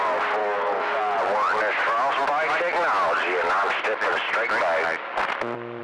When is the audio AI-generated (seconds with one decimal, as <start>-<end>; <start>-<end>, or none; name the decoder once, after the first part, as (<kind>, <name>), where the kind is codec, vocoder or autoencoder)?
0.4-1.0 (codec, DAC)